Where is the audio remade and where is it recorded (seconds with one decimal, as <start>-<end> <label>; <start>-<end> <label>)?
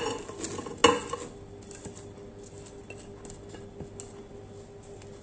0.0-5.2 recorded